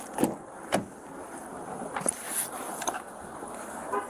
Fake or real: real